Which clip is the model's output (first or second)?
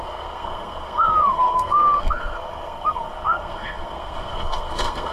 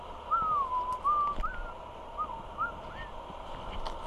first